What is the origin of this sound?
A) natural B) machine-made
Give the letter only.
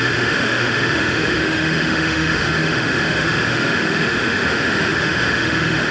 B